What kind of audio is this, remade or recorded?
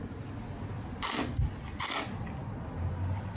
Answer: recorded